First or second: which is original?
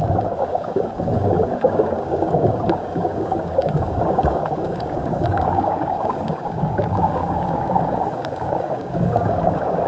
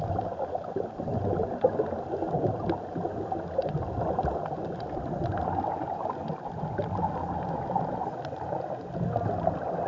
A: second